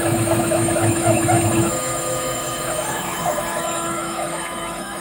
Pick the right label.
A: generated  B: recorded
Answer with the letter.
A